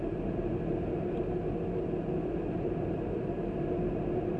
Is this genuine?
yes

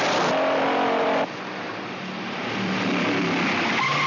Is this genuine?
no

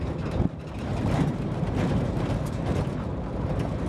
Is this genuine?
no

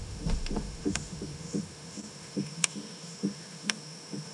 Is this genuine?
no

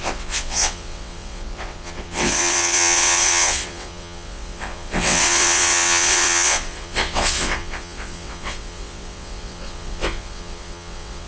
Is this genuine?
no